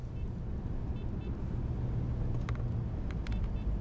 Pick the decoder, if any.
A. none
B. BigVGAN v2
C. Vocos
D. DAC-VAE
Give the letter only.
A